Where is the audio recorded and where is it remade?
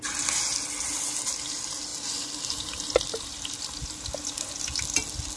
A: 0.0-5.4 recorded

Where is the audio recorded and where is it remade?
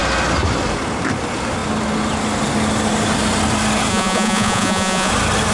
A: 0.0-3.9 recorded; 3.9-5.1 remade; 5.1-5.5 recorded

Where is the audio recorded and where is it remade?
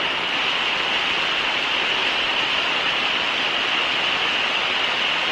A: 0.0-5.3 recorded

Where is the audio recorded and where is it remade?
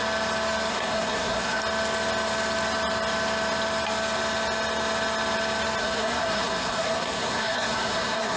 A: 0.0-0.7 recorded; 0.7-1.6 remade; 1.6-5.8 recorded; 5.8-8.4 remade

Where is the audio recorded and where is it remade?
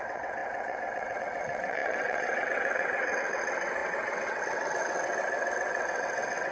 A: 0.0-6.5 remade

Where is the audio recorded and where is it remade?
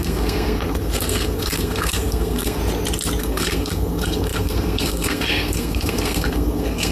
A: 0.0-2.6 remade; 2.6-3.2 recorded; 3.2-6.9 remade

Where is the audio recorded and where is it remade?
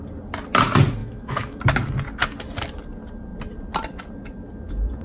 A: 0.0-1.0 recorded; 1.0-1.6 remade; 1.6-5.0 recorded